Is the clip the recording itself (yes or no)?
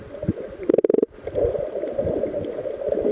yes